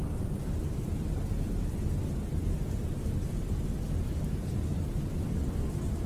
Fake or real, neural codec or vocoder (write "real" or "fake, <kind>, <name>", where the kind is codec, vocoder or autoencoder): real